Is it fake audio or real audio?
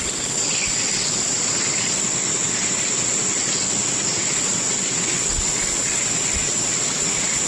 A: fake